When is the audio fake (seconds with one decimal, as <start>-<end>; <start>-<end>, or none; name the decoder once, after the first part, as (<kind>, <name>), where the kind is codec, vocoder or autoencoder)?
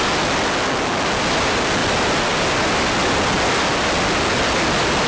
none